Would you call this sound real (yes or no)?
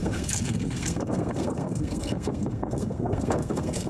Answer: no